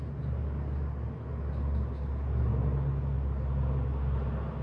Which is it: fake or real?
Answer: real